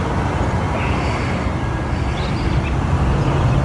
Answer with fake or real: real